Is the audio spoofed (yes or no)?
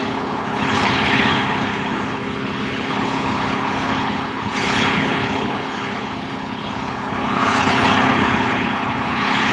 yes